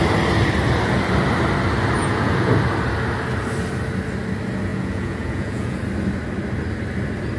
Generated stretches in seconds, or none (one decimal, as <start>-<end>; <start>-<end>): 2.0-2.5; 4.7-5.8